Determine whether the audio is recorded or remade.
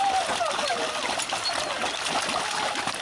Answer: recorded